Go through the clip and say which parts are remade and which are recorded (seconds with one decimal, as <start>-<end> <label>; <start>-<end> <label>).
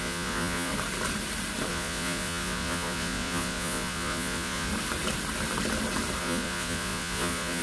0.0-0.7 remade; 0.7-1.7 recorded; 1.7-4.7 remade; 4.7-6.2 recorded; 6.2-7.6 remade